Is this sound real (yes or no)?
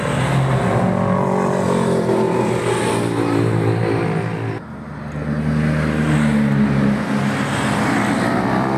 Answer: yes